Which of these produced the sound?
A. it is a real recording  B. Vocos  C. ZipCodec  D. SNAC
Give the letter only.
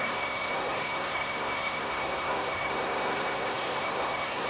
D